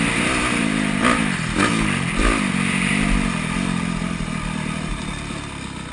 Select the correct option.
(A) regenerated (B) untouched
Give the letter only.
B